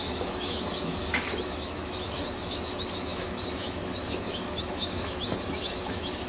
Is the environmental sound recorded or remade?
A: remade